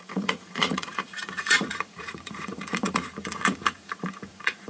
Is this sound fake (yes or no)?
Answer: yes